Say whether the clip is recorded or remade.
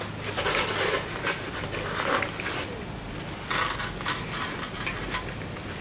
recorded